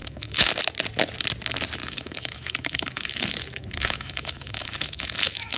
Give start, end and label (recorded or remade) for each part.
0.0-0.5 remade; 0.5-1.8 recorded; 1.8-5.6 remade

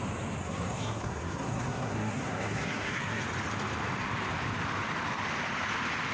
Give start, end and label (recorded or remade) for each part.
0.0-0.4 recorded; 0.4-3.2 remade; 3.2-6.1 recorded

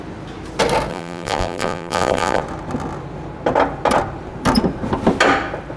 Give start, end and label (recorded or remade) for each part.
0.0-0.9 recorded; 0.9-2.4 remade; 2.4-5.8 recorded

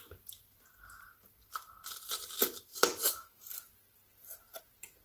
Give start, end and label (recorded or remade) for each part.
0.0-2.7 recorded; 2.7-3.5 remade; 3.5-5.0 recorded

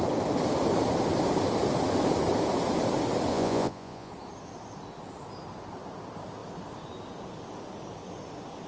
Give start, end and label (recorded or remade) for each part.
0.0-3.3 recorded; 3.3-4.1 remade; 4.1-8.7 recorded